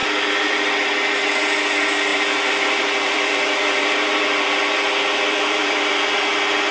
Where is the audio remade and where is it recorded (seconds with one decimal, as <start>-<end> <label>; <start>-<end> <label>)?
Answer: 0.0-0.7 remade; 0.7-2.1 recorded; 2.1-6.1 remade; 6.1-6.7 recorded